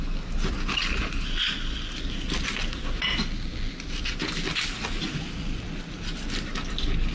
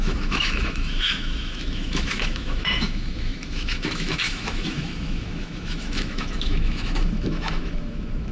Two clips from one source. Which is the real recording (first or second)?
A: first